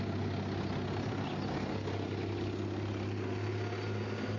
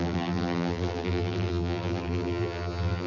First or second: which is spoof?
second